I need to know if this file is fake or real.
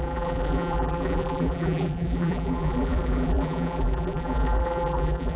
fake